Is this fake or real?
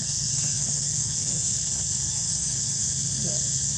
fake